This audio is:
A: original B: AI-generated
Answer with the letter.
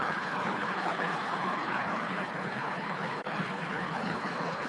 B